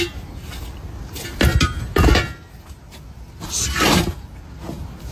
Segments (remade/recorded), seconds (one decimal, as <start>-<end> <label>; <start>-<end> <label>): 0.0-5.1 recorded